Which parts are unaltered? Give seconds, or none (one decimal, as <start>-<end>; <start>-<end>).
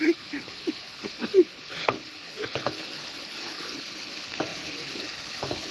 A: none